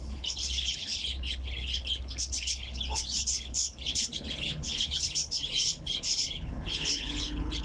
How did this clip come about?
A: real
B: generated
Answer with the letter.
B